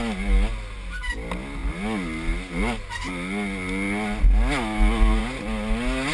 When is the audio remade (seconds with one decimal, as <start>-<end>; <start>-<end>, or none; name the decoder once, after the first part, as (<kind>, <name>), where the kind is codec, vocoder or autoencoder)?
none